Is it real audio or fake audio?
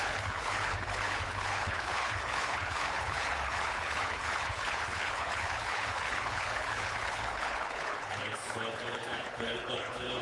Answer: fake